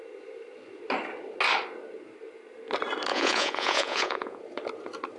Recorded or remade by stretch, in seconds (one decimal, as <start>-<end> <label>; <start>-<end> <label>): 0.0-3.1 recorded; 3.1-4.4 remade; 4.4-5.2 recorded